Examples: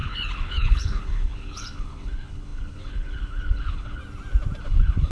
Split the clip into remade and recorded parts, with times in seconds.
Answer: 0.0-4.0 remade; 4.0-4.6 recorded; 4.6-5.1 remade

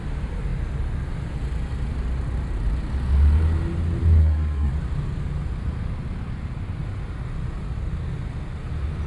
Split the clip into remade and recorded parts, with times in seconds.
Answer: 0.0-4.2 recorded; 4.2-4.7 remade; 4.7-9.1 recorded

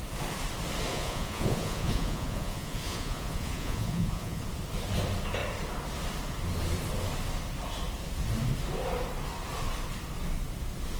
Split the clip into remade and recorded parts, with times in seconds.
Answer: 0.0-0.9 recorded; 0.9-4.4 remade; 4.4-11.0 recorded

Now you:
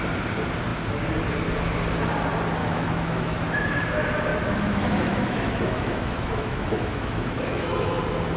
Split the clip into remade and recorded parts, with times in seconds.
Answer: 0.0-2.6 recorded; 2.6-3.9 remade; 3.9-4.3 recorded; 4.3-8.0 remade; 8.0-8.4 recorded